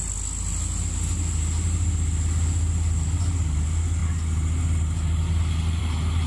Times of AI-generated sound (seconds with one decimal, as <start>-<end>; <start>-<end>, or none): none